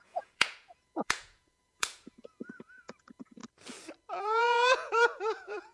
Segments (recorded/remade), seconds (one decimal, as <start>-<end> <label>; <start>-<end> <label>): 0.0-3.4 remade; 3.4-4.2 recorded; 4.2-5.7 remade